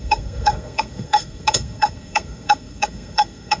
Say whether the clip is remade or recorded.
remade